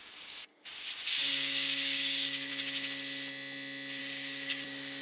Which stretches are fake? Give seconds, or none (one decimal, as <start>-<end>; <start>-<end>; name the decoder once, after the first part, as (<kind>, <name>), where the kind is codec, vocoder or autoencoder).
0.0-0.5 (codec, DAC); 1.3-2.5; 4.0-5.0